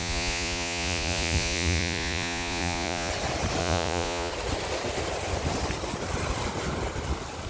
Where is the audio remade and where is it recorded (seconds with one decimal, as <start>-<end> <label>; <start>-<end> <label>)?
0.0-3.1 remade; 3.1-3.6 recorded; 3.6-4.3 remade; 4.3-7.5 recorded